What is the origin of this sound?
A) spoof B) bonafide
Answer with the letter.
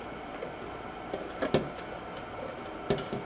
B